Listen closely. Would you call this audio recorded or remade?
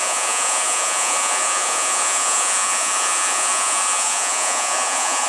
remade